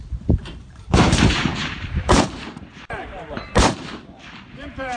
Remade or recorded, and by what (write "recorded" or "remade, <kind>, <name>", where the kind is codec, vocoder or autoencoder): remade, vocoder, BigVGAN v2